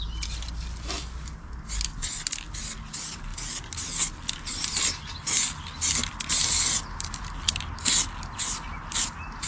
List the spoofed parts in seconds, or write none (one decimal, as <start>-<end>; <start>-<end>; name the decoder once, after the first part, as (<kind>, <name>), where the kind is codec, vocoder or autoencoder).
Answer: none